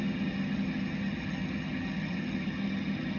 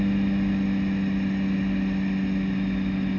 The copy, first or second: first